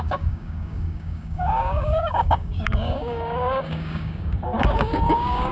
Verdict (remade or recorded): remade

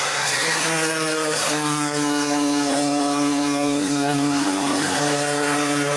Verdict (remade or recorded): remade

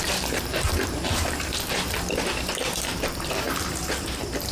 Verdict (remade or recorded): remade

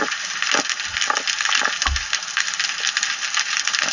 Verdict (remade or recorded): recorded